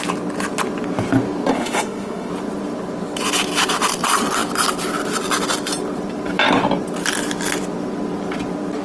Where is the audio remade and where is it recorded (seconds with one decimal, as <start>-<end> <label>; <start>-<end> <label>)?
0.0-1.5 recorded; 1.5-2.3 remade; 2.3-8.8 recorded